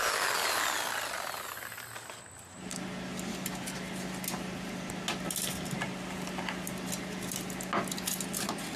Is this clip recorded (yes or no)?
yes